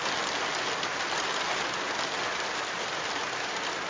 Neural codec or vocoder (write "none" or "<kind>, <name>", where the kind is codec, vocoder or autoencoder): none